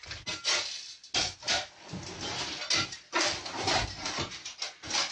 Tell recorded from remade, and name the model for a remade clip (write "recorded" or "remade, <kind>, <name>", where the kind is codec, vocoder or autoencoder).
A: recorded